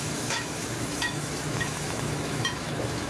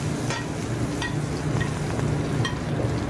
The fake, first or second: first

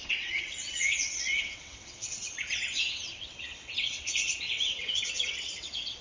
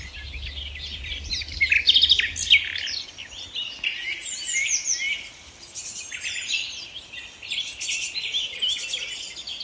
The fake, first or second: first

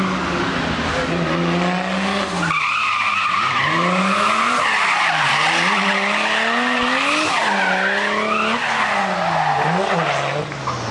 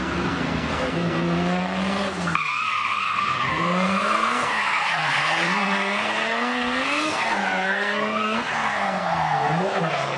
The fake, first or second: second